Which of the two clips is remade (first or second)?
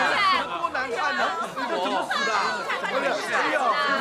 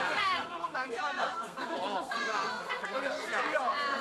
second